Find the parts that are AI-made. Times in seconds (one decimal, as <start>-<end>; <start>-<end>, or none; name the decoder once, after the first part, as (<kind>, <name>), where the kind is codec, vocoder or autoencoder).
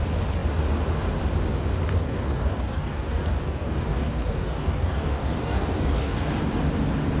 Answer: 2.0-6.3 (codec, DAC)